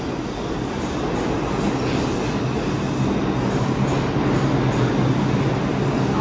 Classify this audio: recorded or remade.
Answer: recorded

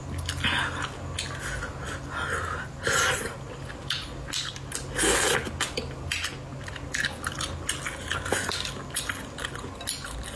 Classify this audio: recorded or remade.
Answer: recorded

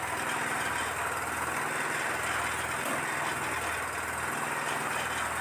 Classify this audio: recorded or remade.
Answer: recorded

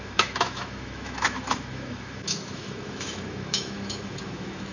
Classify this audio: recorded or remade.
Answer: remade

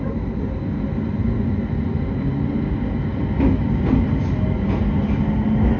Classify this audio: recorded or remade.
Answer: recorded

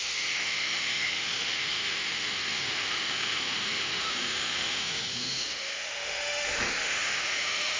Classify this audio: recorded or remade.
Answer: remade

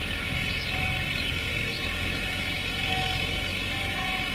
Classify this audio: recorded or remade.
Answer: remade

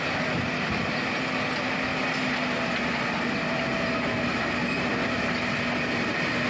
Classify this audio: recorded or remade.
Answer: recorded